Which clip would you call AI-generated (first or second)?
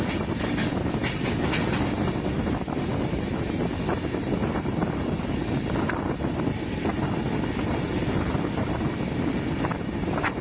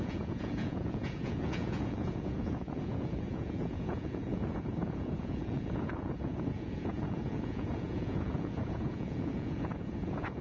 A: second